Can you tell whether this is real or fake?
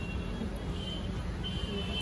real